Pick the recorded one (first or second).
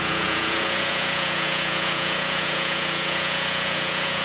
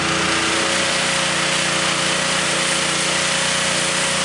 second